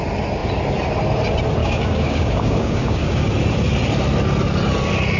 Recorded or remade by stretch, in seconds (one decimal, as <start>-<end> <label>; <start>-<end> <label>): 0.0-1.6 recorded; 1.6-3.3 remade; 3.3-5.2 recorded